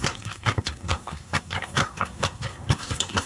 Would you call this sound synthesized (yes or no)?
yes